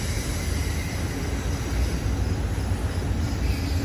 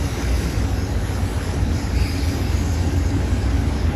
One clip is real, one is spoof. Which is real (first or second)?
first